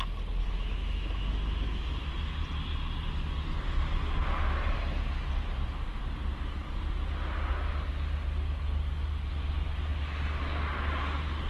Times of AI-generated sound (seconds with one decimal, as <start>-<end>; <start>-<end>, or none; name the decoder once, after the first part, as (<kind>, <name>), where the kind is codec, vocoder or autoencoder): 0.4-2.1 (autoencoder, DAC-VAE)